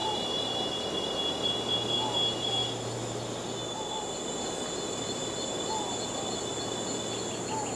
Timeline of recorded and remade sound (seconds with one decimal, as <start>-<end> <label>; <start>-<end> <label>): 0.0-7.8 recorded